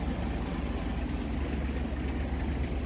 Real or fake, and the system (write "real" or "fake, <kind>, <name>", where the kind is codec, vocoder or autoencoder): real